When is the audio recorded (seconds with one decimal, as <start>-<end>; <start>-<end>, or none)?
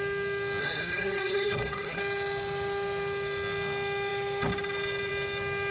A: 0.0-0.6; 2.0-5.7